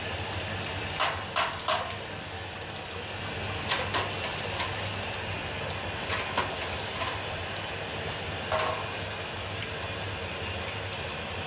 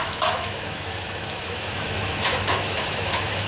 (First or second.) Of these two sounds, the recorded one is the first